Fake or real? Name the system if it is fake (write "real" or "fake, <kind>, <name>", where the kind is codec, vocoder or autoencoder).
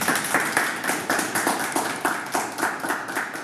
real